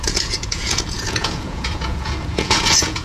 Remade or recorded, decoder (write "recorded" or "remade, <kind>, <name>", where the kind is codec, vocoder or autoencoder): remade, vocoder, Vocos